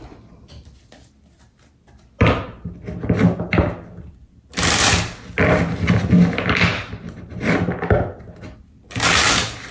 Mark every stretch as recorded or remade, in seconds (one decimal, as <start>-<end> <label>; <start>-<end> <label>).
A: 0.0-9.7 recorded